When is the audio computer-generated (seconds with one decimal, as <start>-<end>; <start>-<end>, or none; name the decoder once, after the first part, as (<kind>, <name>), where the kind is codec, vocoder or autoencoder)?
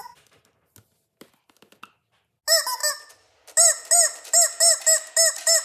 none